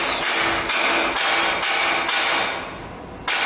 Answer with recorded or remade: recorded